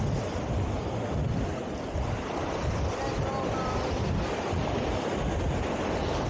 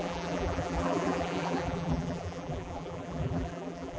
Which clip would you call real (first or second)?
first